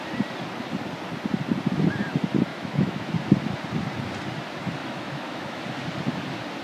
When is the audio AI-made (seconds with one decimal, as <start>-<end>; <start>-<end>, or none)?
2.5-3.1; 4.8-5.6